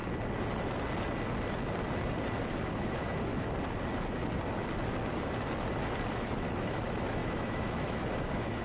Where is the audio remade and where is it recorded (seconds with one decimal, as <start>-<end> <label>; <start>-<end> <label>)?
0.0-2.4 recorded; 2.4-3.3 remade; 3.3-6.3 recorded; 6.3-8.6 remade